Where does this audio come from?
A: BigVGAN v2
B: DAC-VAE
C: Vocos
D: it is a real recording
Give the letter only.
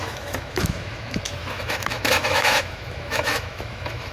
B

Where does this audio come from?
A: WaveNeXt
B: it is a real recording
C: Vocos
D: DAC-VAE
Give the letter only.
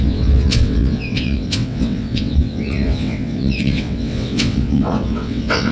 A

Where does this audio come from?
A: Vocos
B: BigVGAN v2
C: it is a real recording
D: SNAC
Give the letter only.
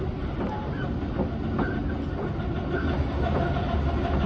C